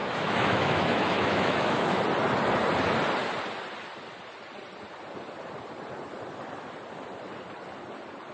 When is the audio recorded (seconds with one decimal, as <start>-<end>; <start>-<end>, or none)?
2.0-8.3